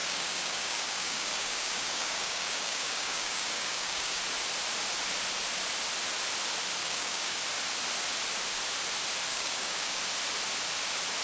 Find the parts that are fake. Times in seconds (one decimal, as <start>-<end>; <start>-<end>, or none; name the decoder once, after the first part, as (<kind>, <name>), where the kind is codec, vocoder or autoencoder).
0.0-4.2 (codec, DAC); 6.8-7.4; 9.3-10.0